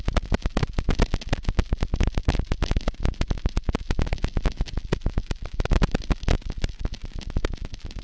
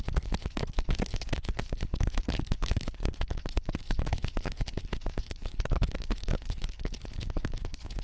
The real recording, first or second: first